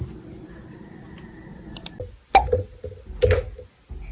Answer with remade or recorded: recorded